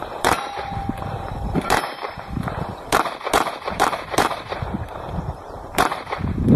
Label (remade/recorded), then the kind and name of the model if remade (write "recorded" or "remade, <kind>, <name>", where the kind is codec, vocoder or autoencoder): remade, vocoder, BigVGAN v2